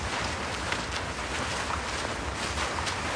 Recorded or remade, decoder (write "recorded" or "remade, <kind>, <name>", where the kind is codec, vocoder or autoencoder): recorded